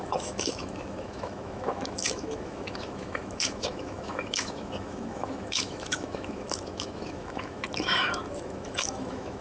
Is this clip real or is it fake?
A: fake